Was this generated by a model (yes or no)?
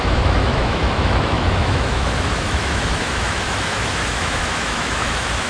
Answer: yes